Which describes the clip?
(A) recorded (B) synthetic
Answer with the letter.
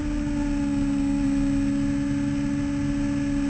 A